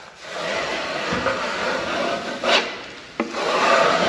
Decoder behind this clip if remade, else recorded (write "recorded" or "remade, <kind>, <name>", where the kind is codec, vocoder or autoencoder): recorded